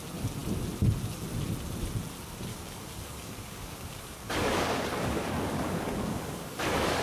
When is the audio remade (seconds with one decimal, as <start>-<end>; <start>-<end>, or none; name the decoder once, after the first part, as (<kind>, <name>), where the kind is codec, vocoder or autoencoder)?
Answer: 2.5-7.0 (codec, DAC)